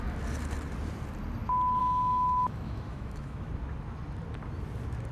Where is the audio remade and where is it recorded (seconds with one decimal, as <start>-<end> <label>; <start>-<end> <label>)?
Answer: 0.0-1.8 recorded; 1.8-3.5 remade; 3.5-5.1 recorded